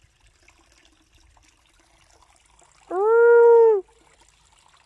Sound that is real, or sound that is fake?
real